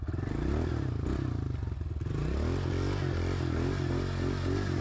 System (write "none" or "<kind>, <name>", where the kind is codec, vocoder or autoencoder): none